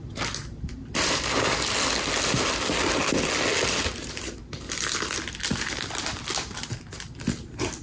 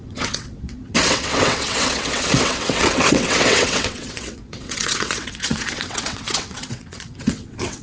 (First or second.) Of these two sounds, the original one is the first